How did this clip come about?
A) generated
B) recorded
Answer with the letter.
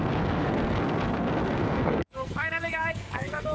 A